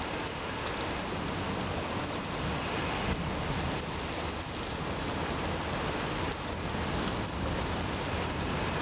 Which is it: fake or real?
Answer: real